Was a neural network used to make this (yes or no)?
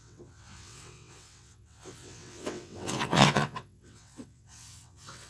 yes